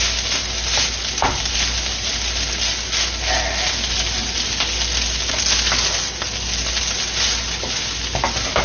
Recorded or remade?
recorded